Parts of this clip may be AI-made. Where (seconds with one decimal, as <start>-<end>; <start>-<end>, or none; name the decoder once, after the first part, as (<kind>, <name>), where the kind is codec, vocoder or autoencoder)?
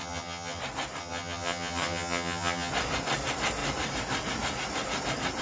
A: 0.0-0.6 (vocoder, HiFi-GAN); 1.0-2.7